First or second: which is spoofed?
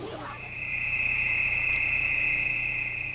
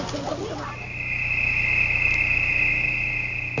first